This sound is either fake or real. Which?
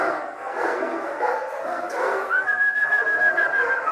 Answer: fake